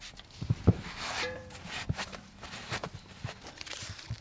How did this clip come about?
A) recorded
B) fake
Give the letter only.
B